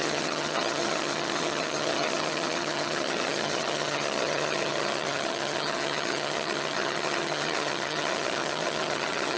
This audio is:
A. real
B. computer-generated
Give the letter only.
B